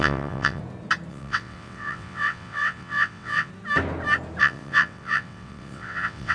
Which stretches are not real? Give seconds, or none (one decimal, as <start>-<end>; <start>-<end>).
0.0-0.6; 1.1-3.5; 4.4-6.3